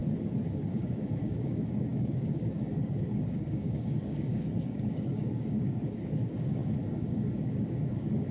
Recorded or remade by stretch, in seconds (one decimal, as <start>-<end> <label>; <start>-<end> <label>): 0.0-0.7 recorded; 0.7-8.3 remade

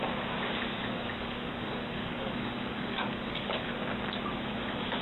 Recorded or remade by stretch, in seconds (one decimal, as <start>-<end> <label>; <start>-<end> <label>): 0.0-0.7 recorded; 0.7-3.7 remade; 3.7-5.0 recorded

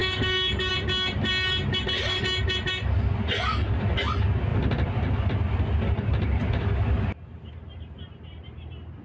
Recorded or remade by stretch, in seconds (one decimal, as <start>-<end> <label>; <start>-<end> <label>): 0.0-0.7 remade; 0.7-9.0 recorded